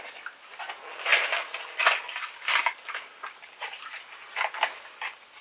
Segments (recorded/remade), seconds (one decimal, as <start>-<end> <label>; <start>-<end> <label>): 0.0-5.4 recorded